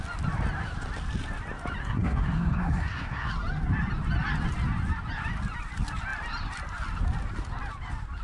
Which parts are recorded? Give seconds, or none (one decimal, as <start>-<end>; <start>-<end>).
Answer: 0.0-1.8; 3.3-8.2